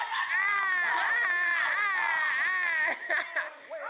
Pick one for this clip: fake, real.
real